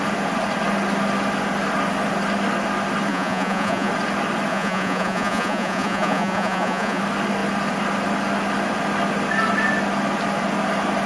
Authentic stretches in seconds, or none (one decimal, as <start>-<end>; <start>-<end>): 0.0-3.1; 3.9-4.5; 7.0-11.1